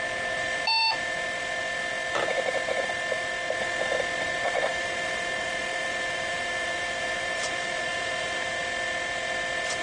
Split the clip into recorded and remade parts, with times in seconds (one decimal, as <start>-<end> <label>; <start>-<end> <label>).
0.0-4.7 recorded; 4.7-8.6 remade; 8.6-9.8 recorded